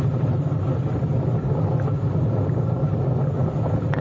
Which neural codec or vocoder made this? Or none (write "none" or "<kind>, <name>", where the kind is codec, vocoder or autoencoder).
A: none